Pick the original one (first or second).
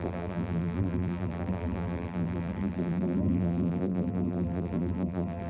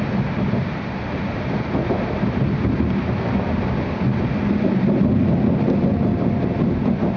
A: second